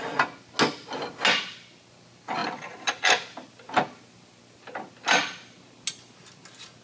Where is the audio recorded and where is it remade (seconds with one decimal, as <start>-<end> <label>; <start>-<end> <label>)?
0.0-6.8 recorded